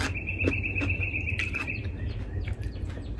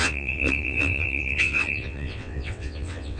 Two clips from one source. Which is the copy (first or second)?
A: second